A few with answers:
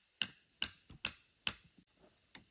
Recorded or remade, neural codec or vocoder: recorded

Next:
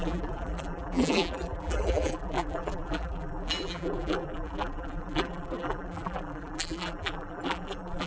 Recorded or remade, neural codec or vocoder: remade, vocoder, BigVGAN v2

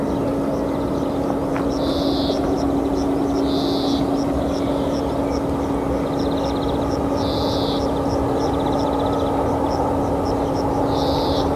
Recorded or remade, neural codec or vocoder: recorded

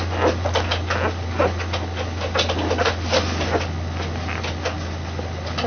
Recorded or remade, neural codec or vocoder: recorded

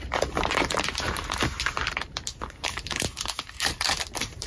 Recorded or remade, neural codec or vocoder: remade, vocoder, BigVGAN v2